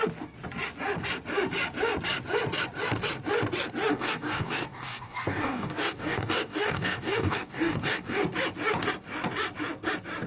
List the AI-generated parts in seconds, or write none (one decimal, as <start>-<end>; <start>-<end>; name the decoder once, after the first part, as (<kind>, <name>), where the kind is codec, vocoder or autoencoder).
3.9-8.2 (codec, DAC)